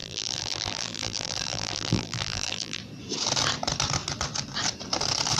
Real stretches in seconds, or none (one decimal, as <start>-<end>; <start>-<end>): 2.8-5.4